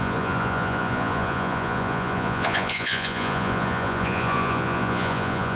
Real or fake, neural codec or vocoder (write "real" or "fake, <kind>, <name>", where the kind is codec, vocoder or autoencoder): fake, vocoder, Vocos